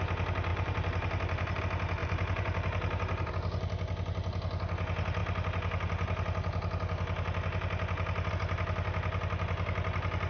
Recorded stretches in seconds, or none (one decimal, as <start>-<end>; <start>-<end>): 0.0-0.5; 1.6-2.0; 3.3-10.3